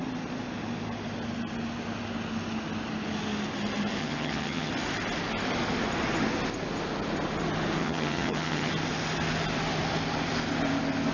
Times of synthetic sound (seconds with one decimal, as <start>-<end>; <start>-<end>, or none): 4.0-4.7; 7.8-8.7